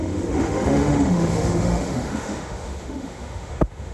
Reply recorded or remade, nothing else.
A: remade